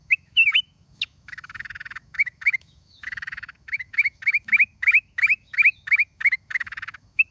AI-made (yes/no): yes